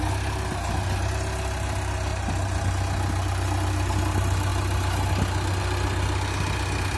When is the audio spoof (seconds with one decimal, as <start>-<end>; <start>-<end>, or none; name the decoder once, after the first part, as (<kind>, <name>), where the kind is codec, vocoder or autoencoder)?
2.1-2.6 (vocoder, BigVGAN v2)